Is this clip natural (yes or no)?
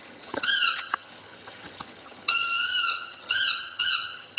no